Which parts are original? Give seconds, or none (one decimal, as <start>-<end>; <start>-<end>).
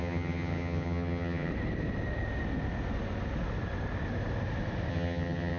1.5-4.9